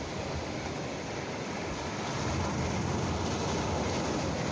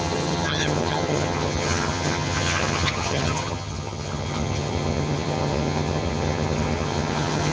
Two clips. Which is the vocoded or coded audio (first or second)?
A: second